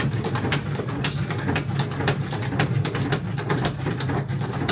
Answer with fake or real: real